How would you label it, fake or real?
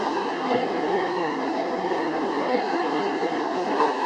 fake